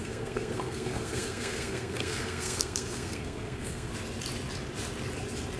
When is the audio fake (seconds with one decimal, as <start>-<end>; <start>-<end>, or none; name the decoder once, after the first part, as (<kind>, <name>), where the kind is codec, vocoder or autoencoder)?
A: 0.0-3.9 (codec, SNAC)